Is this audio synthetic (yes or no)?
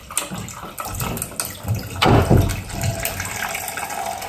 no